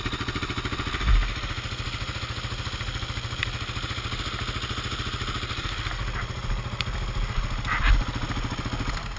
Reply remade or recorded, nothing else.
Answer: recorded